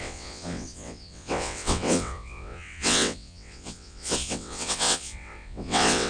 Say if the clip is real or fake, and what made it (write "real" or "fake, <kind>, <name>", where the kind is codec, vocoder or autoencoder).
fake, vocoder, WaveNeXt